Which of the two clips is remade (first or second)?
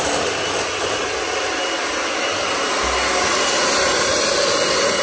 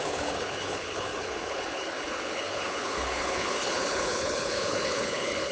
second